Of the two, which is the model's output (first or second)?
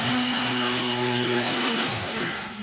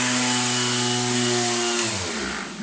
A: first